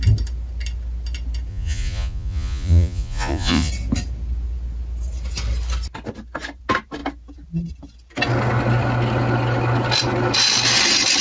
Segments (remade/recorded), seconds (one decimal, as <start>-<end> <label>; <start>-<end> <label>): 0.0-1.5 recorded; 1.5-3.7 remade; 3.7-11.2 recorded